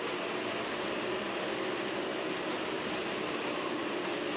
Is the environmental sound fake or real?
real